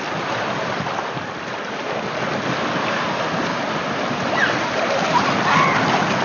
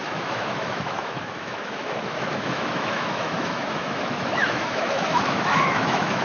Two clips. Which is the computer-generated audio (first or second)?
second